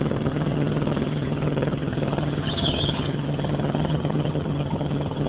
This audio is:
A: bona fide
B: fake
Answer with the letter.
B